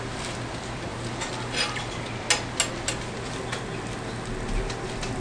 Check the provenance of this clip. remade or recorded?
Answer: recorded